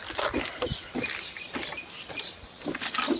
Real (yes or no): yes